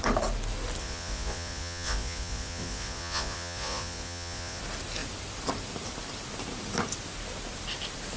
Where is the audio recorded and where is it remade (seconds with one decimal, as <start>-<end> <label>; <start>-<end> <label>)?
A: 0.0-0.8 recorded; 0.8-4.6 remade; 4.6-8.2 recorded